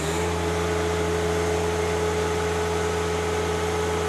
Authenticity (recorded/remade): recorded